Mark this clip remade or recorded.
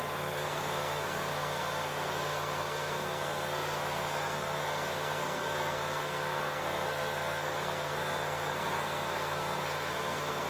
remade